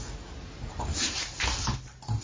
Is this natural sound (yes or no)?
yes